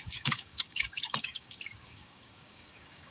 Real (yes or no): no